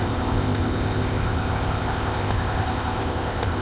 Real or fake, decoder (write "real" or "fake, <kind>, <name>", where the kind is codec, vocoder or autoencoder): fake, codec, ZipCodec